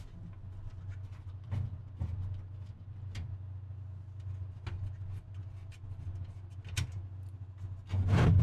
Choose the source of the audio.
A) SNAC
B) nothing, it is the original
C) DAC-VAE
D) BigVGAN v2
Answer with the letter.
B